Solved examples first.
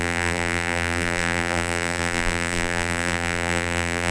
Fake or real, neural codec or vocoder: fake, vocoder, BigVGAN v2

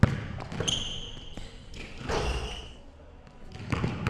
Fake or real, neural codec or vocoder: real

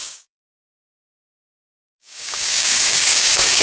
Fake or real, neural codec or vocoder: fake, codec, DAC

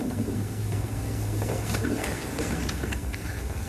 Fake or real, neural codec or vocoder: fake, codec, SNAC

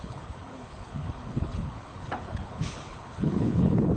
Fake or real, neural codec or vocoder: fake, codec, HILCodec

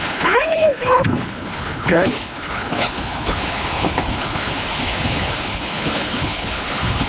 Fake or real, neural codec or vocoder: fake, codec, HILCodec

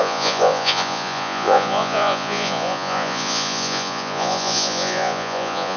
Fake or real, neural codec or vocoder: fake, vocoder, Vocos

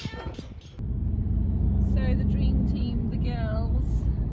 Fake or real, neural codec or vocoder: real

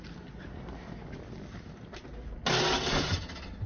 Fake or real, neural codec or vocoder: real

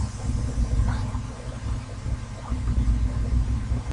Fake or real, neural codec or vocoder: real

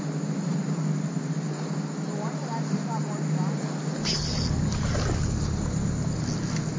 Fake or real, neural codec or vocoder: real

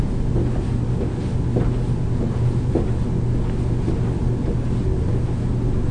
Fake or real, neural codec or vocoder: real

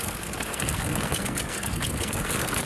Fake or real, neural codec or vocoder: fake, codec, SNAC